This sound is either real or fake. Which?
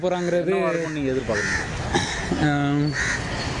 real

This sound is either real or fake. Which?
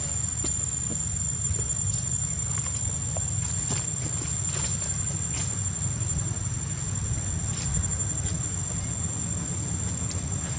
real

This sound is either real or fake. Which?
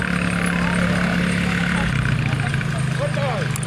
real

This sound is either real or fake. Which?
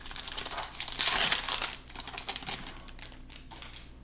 real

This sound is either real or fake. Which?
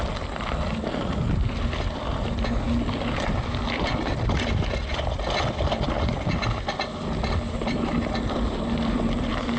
real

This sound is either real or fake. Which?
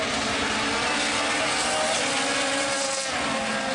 real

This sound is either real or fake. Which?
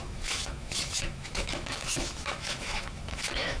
fake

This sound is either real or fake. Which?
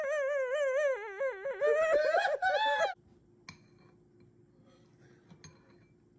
real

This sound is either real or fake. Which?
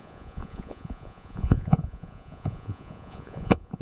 fake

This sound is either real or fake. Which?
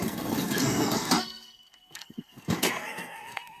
fake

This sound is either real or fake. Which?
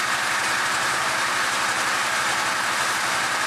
real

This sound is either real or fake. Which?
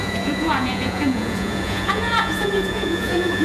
fake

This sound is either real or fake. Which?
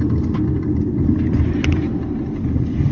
real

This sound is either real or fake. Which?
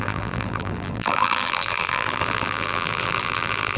fake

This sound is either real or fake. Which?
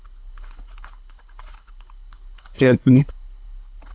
fake